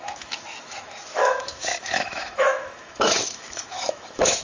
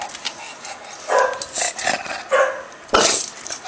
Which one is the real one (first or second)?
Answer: second